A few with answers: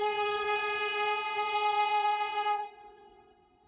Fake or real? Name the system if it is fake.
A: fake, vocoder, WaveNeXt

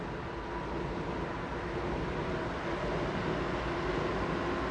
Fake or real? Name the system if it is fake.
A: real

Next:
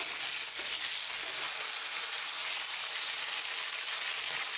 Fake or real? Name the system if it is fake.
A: real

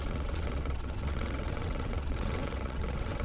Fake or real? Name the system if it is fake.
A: fake, vocoder, WaveNeXt